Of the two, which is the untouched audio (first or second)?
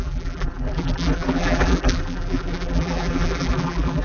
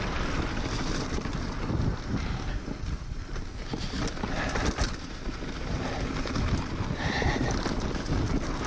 second